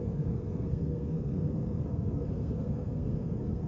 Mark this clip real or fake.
fake